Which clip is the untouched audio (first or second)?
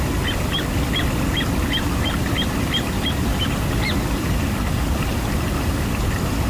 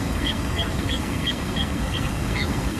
first